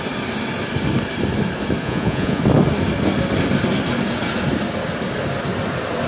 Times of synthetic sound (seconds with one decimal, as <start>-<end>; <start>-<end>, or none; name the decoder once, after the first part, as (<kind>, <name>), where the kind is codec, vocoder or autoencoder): 1.8-2.4 (vocoder, Vocos)